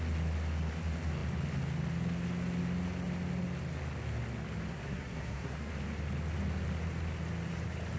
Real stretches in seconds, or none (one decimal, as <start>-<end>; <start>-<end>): 0.0-4.7; 5.7-8.0